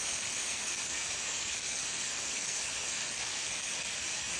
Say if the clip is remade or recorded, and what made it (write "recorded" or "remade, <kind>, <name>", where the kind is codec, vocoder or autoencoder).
remade, codec, SNAC